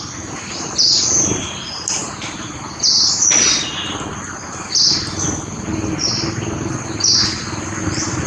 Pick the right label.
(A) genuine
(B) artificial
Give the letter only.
A